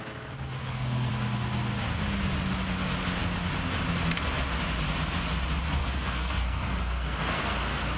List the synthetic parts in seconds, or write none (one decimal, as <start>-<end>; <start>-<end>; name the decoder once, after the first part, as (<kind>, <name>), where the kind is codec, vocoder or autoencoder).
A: 0.6-1.1 (codec, SNAC); 5.8-8.0